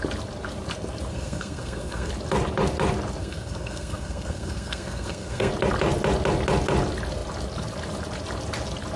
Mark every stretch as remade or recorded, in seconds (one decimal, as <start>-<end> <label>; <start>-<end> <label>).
0.0-1.1 recorded; 1.1-2.1 remade; 2.1-3.2 recorded; 3.2-5.5 remade; 5.5-9.0 recorded